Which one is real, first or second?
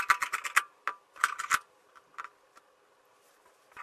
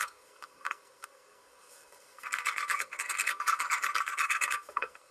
first